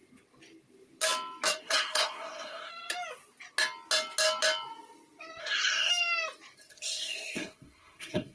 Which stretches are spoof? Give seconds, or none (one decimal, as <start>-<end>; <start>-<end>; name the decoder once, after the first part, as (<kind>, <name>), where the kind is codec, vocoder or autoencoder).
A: 1.6-2.7 (codec, SNAC); 5.4-5.9; 6.7-8.3